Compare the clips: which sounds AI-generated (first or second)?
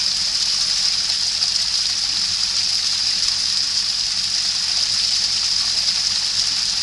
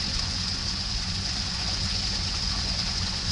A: second